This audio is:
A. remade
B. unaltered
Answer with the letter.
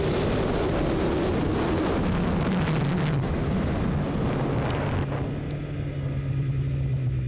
B